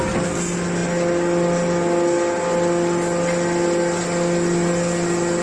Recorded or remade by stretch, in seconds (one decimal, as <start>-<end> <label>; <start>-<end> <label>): 0.0-5.4 recorded